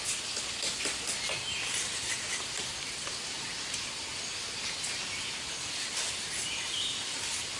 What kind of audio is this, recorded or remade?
recorded